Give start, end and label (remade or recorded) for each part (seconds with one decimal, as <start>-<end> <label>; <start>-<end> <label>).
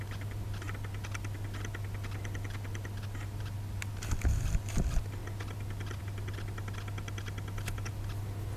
0.0-8.6 recorded